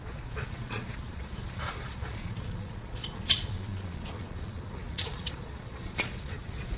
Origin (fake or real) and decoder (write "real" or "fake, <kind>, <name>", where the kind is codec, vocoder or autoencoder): fake, vocoder, Vocos